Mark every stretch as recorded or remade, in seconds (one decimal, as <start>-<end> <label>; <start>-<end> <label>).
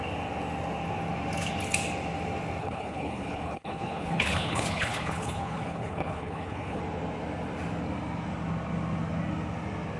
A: 0.0-2.6 recorded; 2.6-6.8 remade; 6.8-10.0 recorded